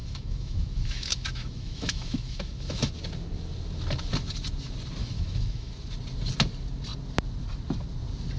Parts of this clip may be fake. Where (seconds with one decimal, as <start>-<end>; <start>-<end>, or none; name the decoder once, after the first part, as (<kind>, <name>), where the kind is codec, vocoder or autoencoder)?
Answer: 0.0-2.9 (autoencoder, DAC-VAE); 5.0-5.7